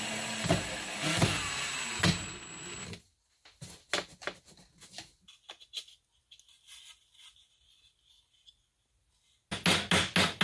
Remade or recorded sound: recorded